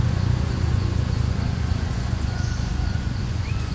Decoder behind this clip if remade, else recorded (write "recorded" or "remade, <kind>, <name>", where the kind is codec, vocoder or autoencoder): remade, vocoder, Vocos